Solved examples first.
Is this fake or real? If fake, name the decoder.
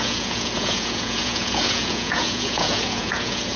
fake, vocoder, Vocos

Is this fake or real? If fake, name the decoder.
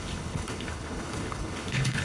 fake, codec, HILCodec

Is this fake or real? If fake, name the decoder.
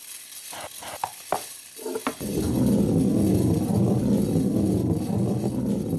real